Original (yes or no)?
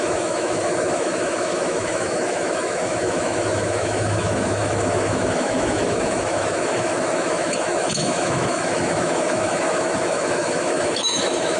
no